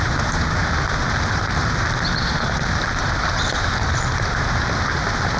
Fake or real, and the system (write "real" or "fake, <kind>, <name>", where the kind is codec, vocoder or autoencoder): fake, vocoder, BigVGAN v2